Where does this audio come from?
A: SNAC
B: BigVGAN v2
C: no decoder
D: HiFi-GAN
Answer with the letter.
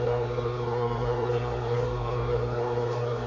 A